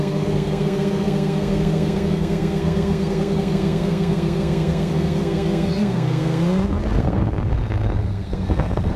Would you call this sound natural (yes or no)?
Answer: no